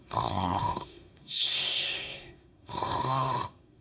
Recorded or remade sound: remade